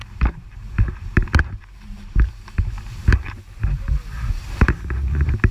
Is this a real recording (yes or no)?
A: no